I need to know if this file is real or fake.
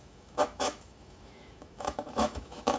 fake